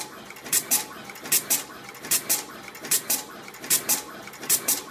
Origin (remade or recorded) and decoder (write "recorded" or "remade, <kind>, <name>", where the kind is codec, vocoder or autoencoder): recorded